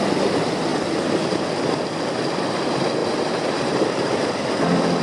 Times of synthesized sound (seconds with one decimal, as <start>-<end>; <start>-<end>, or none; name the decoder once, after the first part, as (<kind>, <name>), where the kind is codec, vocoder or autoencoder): 3.0-4.1 (vocoder, BigVGAN v2)